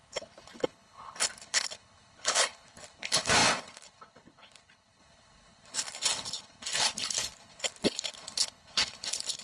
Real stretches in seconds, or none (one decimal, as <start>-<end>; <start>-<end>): none

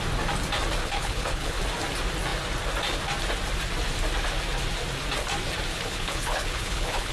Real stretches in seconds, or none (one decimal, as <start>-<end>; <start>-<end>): 0.0-0.8; 1.6-5.7

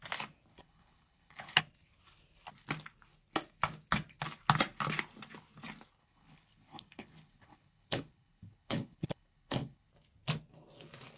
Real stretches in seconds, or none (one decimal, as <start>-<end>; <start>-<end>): 0.0-0.5; 1.6-6.0; 9.9-11.2

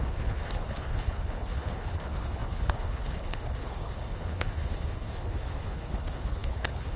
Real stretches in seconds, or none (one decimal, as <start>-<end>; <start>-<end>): none